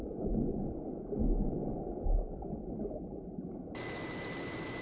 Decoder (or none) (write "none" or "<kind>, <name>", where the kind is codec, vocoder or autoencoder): none